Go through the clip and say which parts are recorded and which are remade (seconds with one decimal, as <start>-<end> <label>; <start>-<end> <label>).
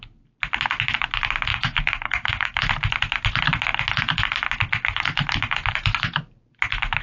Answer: 0.0-1.5 recorded; 1.5-2.6 remade; 2.6-7.0 recorded